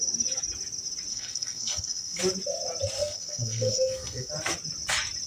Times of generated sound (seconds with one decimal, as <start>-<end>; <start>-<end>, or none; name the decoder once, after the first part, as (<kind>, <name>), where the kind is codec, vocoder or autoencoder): 1.1-2.2 (codec, SNAC); 3.0-4.3